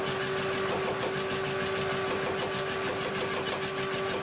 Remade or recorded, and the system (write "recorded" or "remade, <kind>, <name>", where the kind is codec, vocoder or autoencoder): recorded